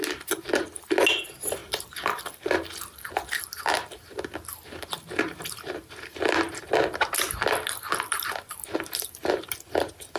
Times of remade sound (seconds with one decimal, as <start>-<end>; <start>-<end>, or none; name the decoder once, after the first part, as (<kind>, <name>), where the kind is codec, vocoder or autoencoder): none